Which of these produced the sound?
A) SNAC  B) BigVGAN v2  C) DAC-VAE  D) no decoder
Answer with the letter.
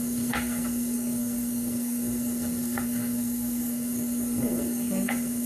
A